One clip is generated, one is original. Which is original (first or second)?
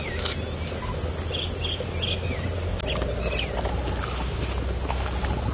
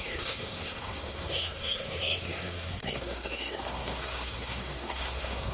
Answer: first